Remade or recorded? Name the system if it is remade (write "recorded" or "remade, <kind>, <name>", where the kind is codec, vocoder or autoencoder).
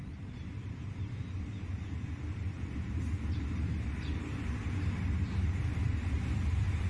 remade, vocoder, BigVGAN v2